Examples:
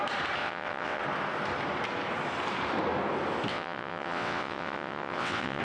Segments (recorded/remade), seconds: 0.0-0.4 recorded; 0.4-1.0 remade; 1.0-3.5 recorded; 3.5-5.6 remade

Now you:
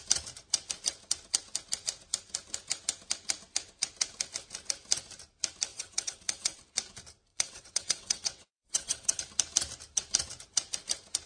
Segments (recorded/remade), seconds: 0.0-5.7 recorded; 5.7-6.6 remade; 6.6-7.3 recorded; 7.3-9.2 remade; 9.2-11.3 recorded

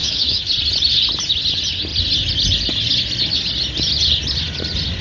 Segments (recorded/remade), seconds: 0.0-0.5 remade; 0.5-5.0 recorded

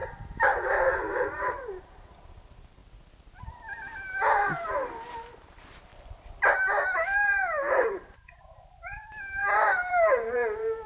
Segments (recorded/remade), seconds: 0.0-2.8 remade; 2.8-4.4 recorded; 4.4-5.9 remade; 5.9-7.0 recorded; 7.0-10.9 remade

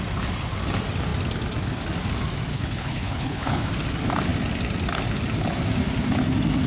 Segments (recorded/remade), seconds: 0.0-2.5 recorded; 2.5-3.7 remade; 3.7-6.7 recorded

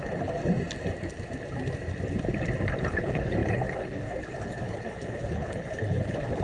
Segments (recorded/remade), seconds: 0.0-0.4 remade; 0.4-2.8 recorded; 2.8-6.4 remade

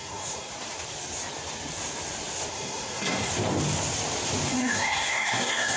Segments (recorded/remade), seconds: 0.0-0.5 remade; 0.5-2.5 recorded; 2.5-3.3 remade; 3.3-4.5 recorded; 4.5-5.8 remade